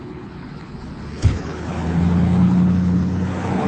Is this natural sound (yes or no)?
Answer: no